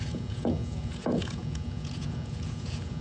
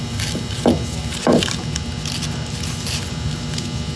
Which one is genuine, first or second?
second